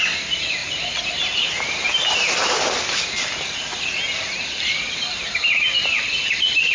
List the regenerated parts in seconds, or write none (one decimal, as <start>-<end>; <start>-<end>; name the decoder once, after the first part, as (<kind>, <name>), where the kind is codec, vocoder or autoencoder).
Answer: none